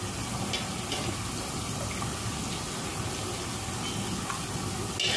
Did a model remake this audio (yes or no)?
no